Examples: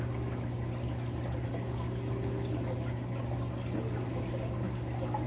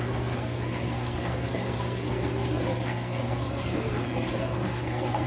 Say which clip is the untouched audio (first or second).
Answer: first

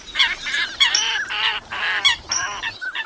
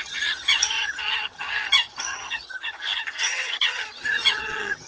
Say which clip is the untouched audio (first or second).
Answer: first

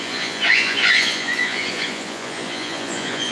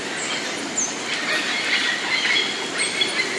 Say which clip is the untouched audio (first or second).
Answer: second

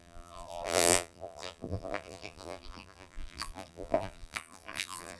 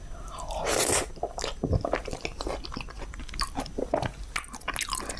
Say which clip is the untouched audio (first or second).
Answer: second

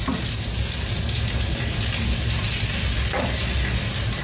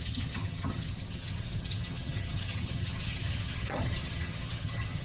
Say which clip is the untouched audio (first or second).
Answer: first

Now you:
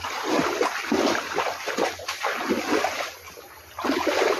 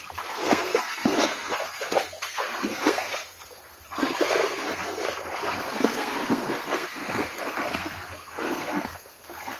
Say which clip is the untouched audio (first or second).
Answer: first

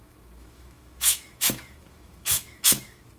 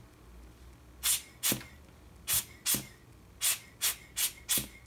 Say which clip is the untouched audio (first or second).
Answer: second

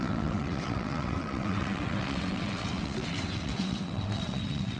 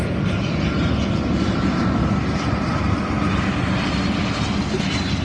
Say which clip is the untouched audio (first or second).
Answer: second